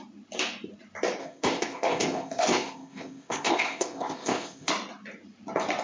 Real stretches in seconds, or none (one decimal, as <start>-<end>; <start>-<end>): 0.0-1.2; 4.7-5.8